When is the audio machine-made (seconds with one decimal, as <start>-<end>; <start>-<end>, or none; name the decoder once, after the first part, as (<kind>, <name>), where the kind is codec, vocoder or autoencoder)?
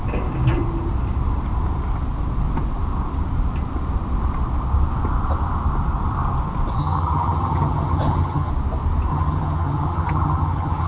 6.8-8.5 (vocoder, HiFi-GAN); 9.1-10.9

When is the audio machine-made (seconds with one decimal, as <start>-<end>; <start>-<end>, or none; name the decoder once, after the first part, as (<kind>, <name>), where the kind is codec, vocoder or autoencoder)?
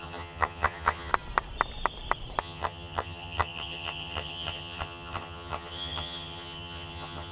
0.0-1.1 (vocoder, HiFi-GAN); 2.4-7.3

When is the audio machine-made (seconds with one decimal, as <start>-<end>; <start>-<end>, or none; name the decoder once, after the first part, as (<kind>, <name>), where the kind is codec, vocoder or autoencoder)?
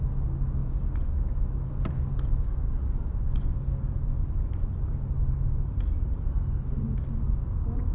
none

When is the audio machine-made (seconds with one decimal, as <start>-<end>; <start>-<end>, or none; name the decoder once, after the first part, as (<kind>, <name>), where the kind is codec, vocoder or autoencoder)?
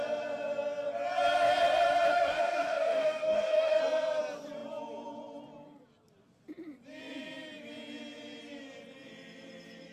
2.1-3.8 (codec, DAC)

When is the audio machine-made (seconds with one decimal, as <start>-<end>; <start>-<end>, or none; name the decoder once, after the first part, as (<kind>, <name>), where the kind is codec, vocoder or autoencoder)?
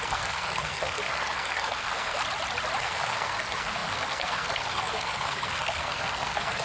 0.0-2.2 (codec, SNAC); 2.8-6.6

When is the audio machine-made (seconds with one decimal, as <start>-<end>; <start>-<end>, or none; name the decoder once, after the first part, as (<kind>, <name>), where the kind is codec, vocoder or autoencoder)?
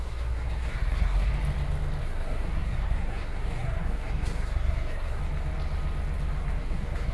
0.0-1.3 (codec, SNAC); 2.0-5.2; 6.6-7.1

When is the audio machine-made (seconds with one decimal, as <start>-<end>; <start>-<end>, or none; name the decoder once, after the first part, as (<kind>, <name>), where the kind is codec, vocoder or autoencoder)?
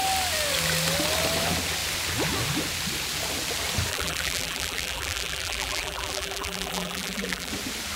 3.9-7.5 (vocoder, BigVGAN v2)